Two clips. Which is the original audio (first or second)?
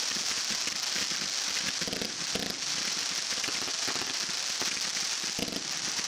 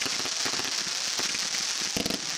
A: second